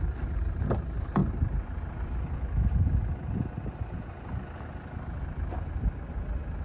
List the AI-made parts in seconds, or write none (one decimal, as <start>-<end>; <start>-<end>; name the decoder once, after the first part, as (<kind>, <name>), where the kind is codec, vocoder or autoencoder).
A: none